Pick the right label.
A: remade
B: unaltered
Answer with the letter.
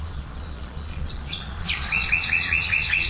A